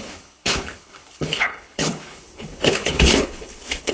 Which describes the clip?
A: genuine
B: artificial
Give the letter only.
B